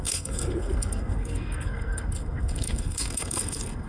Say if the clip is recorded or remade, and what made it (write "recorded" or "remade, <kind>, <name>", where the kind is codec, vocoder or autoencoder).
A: remade, codec, SNAC